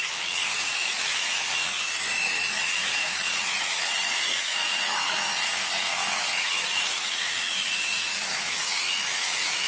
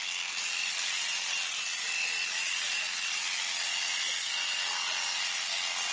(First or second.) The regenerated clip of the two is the first